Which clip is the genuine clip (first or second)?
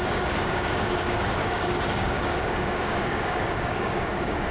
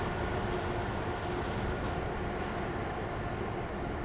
second